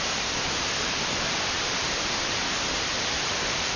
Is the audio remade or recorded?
remade